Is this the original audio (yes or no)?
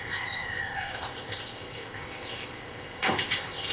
no